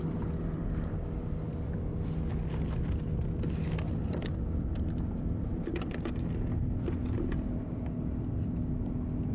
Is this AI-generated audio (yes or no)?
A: no